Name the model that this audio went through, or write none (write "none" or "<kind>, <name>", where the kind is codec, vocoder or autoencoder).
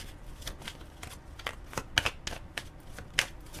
none